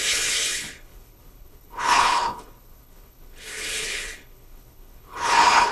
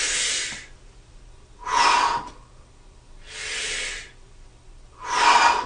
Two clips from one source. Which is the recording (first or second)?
second